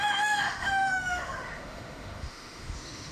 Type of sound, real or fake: fake